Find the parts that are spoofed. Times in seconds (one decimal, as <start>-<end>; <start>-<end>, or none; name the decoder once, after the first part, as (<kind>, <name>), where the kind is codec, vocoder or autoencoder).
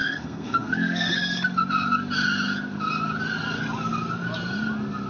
0.0-1.1 (codec, SNAC)